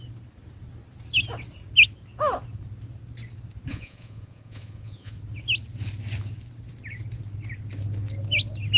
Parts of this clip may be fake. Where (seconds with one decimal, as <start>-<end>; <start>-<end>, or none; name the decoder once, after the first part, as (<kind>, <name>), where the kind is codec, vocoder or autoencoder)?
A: 3.7-5.1 (vocoder, Vocos)

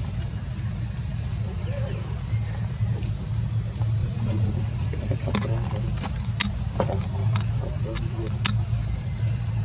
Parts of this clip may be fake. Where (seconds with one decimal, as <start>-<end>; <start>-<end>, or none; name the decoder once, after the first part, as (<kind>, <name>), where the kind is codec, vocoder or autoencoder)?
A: 4.0-4.6 (vocoder, Vocos)

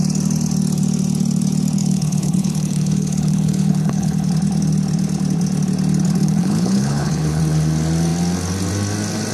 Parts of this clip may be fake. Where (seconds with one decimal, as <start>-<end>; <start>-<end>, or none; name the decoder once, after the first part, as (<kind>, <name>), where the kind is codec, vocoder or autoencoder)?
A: 1.8-4.3 (codec, HILCodec); 6.2-7.4

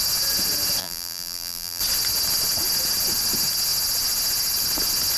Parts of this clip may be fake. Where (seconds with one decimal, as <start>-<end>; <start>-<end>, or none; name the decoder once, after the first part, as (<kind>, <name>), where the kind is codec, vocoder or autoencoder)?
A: 0.8-1.8 (vocoder, BigVGAN v2)

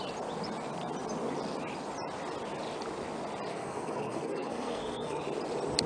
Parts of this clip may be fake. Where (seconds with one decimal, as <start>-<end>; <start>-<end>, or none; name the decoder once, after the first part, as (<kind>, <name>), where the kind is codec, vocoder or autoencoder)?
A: 3.5-5.2 (codec, SNAC)

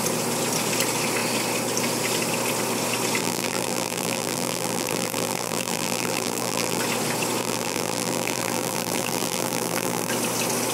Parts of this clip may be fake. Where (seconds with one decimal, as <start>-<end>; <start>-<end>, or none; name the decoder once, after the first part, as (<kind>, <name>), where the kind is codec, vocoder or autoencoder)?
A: 3.2-6.8 (vocoder, BigVGAN v2); 7.4-10.1